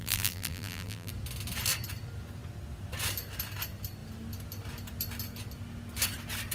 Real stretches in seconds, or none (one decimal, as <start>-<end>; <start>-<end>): 1.1-6.5